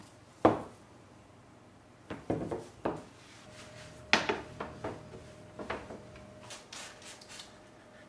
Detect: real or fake real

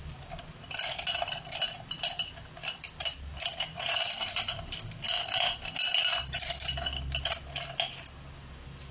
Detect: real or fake real